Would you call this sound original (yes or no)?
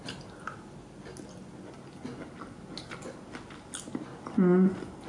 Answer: yes